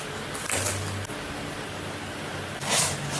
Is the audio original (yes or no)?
yes